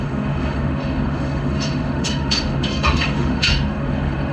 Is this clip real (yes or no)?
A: no